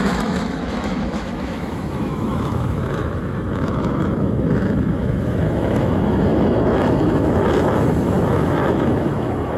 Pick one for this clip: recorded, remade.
remade